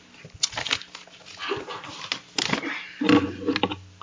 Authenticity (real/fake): real